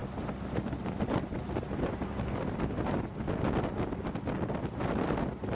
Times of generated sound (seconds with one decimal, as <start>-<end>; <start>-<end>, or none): none